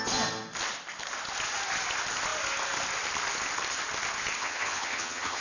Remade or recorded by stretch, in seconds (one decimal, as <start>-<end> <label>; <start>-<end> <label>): 0.0-4.4 recorded; 4.4-5.4 remade